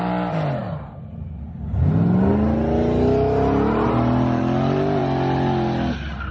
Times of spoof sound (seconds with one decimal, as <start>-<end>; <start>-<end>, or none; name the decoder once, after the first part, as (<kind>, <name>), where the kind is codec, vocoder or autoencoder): none

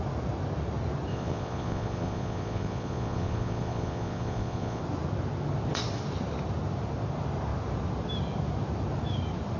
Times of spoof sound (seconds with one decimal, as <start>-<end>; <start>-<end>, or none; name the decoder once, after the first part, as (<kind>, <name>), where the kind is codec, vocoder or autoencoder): 1.1-4.8 (vocoder, Vocos)

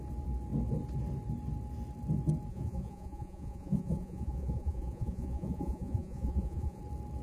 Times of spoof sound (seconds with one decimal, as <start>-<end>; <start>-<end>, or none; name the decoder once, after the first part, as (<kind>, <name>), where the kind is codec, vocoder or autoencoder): 2.5-6.8 (vocoder, Vocos)